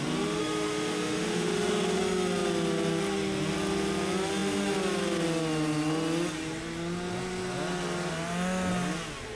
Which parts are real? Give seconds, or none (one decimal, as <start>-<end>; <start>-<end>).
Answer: 0.0-0.4; 2.0-9.3